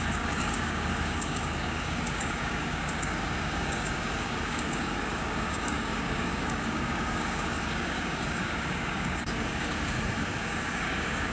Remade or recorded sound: remade